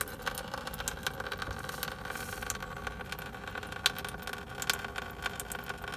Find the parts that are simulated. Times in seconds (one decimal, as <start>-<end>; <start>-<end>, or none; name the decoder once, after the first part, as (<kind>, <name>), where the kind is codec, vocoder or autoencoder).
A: none